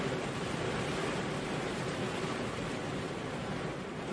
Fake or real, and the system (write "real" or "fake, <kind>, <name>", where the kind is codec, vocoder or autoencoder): real